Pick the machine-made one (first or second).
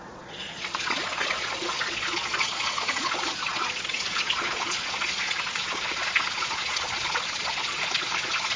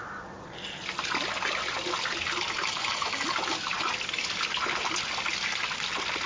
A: first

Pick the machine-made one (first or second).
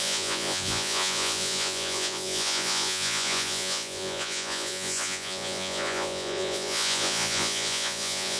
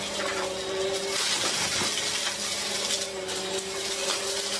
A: first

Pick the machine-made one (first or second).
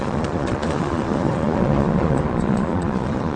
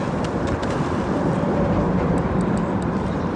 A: first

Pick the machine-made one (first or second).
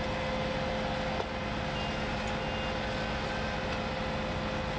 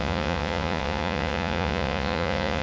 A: second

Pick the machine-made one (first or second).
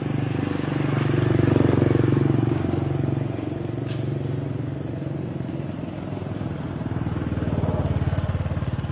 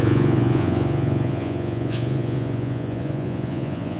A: second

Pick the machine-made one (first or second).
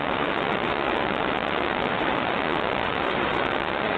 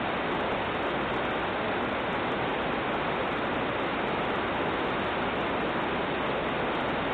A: first